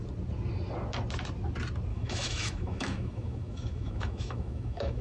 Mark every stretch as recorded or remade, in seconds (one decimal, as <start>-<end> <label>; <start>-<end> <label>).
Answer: 0.0-1.9 recorded; 1.9-5.0 remade